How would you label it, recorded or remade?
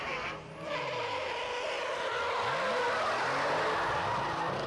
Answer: recorded